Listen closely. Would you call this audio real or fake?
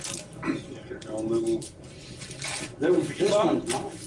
real